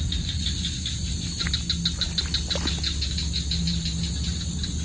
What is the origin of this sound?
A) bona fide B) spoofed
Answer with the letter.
A